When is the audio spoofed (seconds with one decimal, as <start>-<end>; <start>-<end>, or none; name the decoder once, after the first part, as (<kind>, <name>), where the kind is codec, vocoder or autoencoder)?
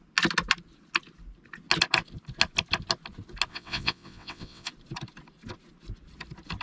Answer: 3.5-4.7 (vocoder, WaveNeXt)